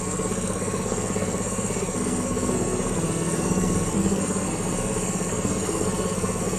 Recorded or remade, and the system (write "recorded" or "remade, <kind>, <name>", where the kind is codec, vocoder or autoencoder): remade, codec, SNAC